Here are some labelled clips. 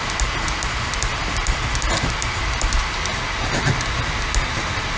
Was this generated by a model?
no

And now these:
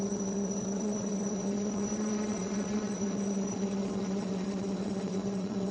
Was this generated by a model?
yes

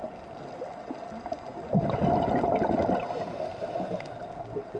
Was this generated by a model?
no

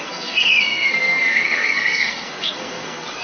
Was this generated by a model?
yes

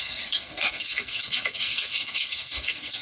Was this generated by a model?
yes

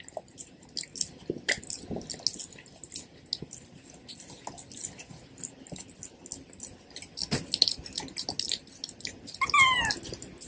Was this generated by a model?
no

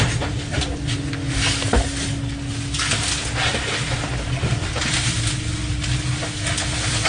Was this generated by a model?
no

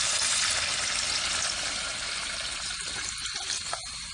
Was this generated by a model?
no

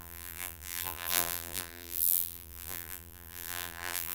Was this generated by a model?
yes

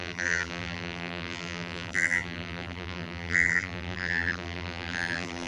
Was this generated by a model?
yes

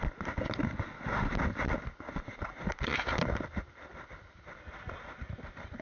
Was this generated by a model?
no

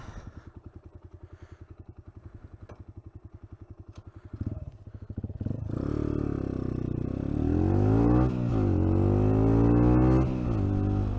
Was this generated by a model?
no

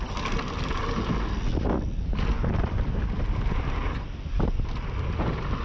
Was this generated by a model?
no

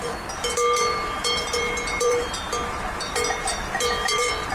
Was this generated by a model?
yes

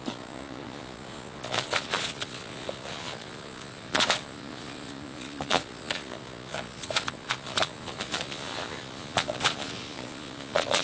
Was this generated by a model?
yes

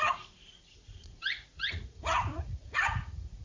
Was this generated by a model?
yes